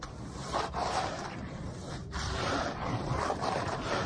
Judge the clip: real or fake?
fake